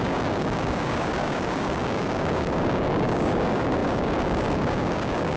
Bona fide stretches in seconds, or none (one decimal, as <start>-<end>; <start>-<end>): none